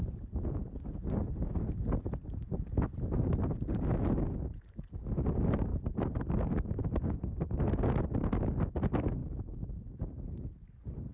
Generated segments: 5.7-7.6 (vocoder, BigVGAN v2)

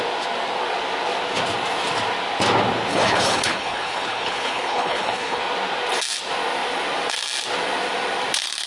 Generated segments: 2.9-5.4 (codec, HILCodec)

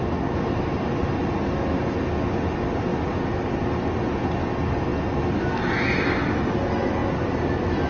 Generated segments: none

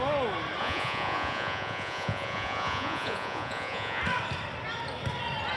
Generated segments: 0.6-4.0 (vocoder, Vocos)

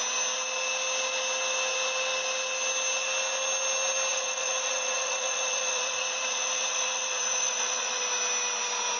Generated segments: 4.1-8.0 (vocoder, Vocos)

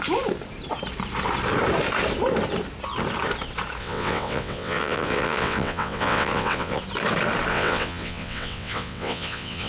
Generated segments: 3.8-6.8 (vocoder, WaveNeXt); 7.5-9.7

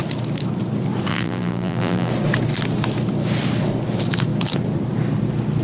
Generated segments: 1.1-2.1 (vocoder, BigVGAN v2)

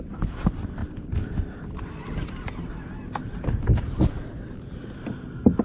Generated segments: none